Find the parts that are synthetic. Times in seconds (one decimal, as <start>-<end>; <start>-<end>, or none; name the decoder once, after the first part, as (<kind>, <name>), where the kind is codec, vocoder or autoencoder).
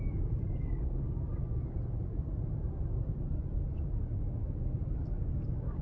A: 0.0-1.3 (codec, DAC); 4.8-5.8